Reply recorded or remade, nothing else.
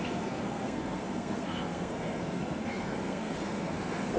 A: remade